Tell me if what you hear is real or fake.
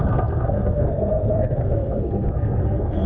fake